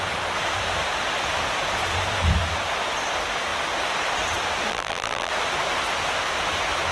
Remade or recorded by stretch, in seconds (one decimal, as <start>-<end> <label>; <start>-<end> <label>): 0.0-4.7 recorded; 4.7-5.3 remade; 5.3-6.9 recorded

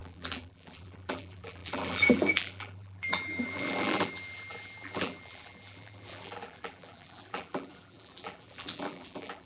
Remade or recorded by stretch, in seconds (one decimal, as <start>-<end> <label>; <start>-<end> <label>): 0.0-9.5 remade

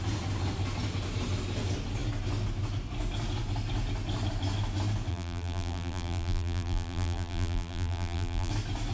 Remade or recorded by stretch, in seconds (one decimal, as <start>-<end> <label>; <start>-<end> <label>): 0.0-5.1 recorded; 5.1-8.5 remade; 8.5-8.9 recorded

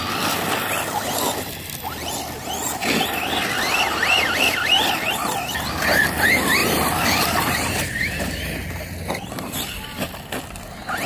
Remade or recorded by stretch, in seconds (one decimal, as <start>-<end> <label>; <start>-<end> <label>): 0.0-6.6 recorded; 6.6-8.4 remade; 8.4-11.1 recorded

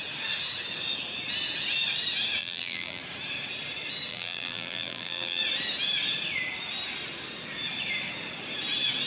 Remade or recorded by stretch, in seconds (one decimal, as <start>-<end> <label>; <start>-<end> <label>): 0.0-2.4 recorded; 2.4-3.0 remade; 3.0-4.1 recorded; 4.1-5.4 remade; 5.4-9.1 recorded

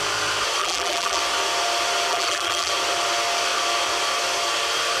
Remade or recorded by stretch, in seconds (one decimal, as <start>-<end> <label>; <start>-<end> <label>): 0.0-0.6 recorded; 0.6-1.2 remade; 1.2-2.1 recorded; 2.1-2.7 remade; 2.7-5.0 recorded